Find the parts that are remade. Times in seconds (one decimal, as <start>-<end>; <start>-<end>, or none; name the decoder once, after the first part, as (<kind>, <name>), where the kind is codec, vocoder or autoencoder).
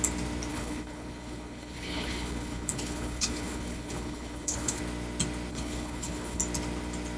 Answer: 0.5-4.8 (codec, HILCodec); 5.5-6.4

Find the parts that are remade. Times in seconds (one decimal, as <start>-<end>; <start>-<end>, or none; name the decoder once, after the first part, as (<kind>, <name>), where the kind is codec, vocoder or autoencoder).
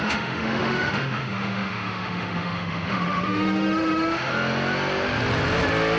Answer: 0.0-4.3 (autoencoder, DAC-VAE)